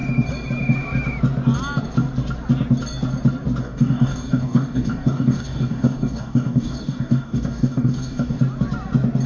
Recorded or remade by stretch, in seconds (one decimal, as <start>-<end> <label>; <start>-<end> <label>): 0.0-3.6 recorded; 3.6-8.4 remade; 8.4-9.3 recorded